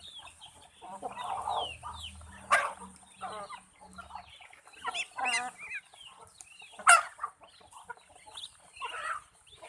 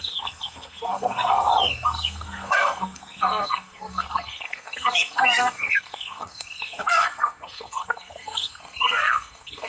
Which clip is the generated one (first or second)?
second